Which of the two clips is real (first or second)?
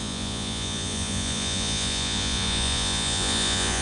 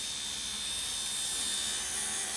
second